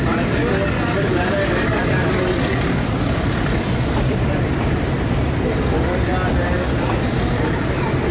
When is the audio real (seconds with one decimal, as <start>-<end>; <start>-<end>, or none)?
0.0-1.8; 4.2-8.1